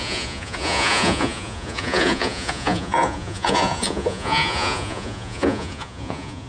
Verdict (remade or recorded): remade